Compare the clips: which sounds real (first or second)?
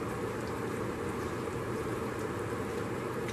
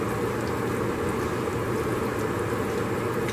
second